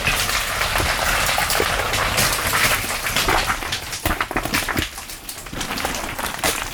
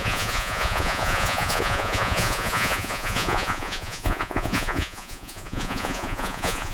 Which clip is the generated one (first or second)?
second